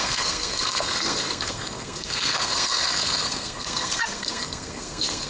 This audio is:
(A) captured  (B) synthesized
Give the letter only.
B